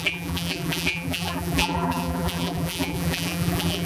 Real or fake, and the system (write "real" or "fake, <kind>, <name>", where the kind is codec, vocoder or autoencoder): fake, vocoder, BigVGAN v2